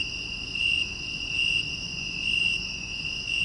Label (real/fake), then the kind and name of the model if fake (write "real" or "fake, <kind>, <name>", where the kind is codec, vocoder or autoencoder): fake, vocoder, Vocos